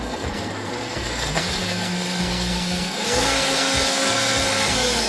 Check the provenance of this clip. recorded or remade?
remade